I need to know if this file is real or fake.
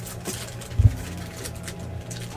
real